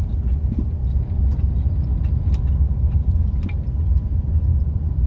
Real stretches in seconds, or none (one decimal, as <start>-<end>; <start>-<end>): 0.0-5.1